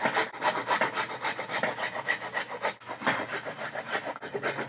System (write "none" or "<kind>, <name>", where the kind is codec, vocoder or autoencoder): none